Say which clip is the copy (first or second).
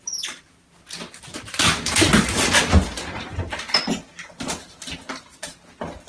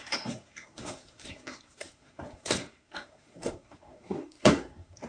second